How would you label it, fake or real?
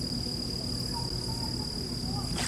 real